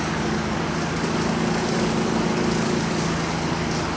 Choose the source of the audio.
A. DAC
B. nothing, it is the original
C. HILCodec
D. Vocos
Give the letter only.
A